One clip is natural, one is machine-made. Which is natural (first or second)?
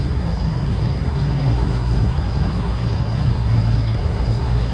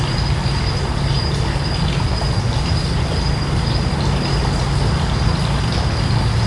second